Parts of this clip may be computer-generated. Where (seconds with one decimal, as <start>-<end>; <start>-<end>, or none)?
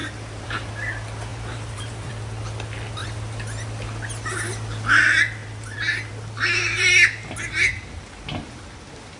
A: 0.0-0.7; 1.3-2.1; 5.4-6.1